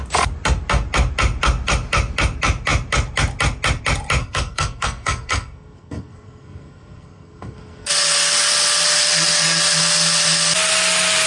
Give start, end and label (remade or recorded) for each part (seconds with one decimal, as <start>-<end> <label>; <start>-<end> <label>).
0.0-4.2 recorded; 4.2-7.9 remade; 7.9-11.3 recorded